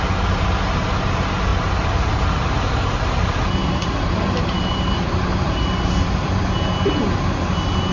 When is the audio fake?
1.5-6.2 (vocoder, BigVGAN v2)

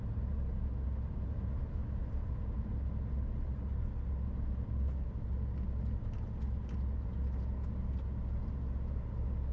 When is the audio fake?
1.8-2.7 (vocoder, BigVGAN v2)

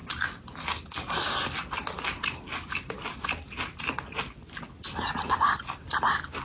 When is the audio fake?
none